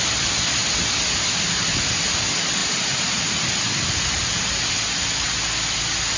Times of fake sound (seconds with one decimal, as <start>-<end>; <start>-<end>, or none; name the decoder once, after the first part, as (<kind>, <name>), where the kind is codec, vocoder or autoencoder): 2.6-3.3 (vocoder, BigVGAN v2)